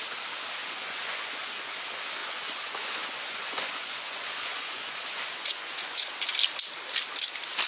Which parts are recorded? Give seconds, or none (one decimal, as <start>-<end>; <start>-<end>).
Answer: 0.0-0.6; 1.7-2.2; 6.1-7.7

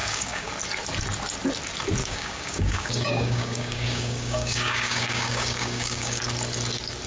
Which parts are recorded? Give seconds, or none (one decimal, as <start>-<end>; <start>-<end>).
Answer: 0.5-2.0; 6.2-7.1

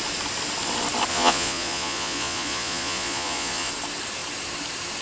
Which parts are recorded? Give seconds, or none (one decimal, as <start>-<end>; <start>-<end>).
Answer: 0.0-1.1; 3.7-5.0

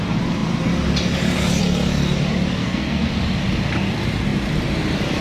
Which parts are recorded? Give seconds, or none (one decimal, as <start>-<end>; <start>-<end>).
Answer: 0.0-2.6; 3.1-5.2

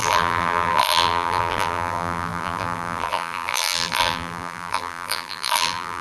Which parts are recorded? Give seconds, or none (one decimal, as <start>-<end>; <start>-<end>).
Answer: none

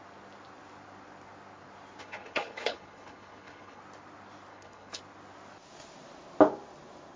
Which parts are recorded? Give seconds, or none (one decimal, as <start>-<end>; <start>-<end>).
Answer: 0.0-2.0; 3.8-4.5; 5.0-7.2

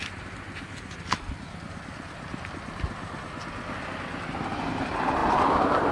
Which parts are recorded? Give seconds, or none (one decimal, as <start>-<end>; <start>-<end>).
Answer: 0.0-5.9

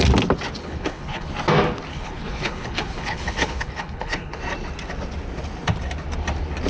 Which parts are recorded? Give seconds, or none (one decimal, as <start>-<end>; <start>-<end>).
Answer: 0.0-0.6; 1.3-1.9; 4.4-6.7